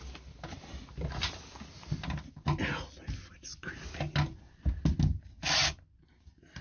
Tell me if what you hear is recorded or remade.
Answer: recorded